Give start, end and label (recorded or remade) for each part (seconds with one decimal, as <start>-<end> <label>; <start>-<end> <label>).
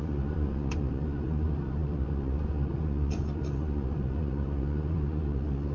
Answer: 0.0-5.7 remade